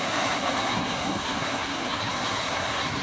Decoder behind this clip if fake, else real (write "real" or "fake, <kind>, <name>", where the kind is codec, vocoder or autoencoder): fake, codec, SNAC